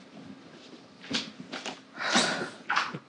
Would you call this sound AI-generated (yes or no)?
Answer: no